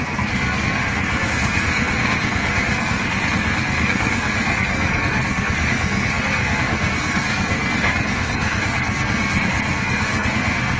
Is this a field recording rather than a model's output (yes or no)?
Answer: no